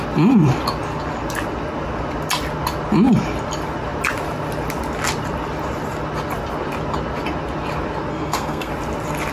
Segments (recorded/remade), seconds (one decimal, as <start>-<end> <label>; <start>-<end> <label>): 0.0-8.1 recorded; 8.1-8.7 remade; 8.7-9.3 recorded